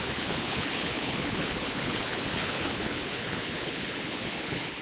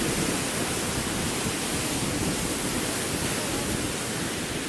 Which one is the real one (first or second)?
second